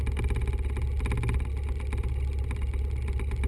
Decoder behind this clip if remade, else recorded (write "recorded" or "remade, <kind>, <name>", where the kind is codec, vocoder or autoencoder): recorded